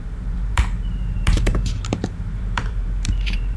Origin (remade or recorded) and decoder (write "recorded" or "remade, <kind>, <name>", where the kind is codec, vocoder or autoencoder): remade, vocoder, BigVGAN v2